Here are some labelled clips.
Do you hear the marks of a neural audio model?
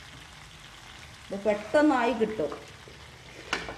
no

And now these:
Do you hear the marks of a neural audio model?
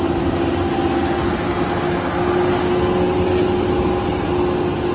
no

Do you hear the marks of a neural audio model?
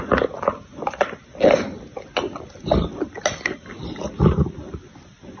no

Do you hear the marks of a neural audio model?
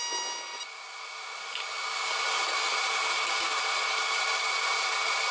no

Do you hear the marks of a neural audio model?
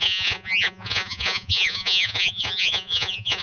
yes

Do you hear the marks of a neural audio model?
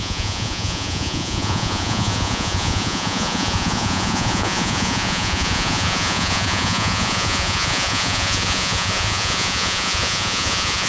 yes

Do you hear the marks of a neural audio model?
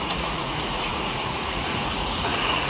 yes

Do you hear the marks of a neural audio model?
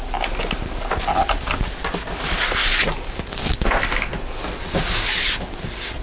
no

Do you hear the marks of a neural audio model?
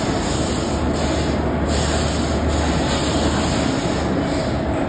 no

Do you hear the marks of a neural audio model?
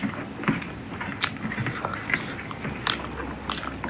no